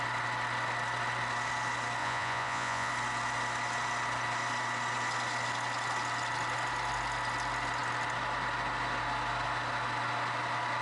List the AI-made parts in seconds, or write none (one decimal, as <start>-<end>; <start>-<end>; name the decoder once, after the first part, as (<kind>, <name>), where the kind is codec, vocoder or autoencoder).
2.0-2.9 (vocoder, Vocos)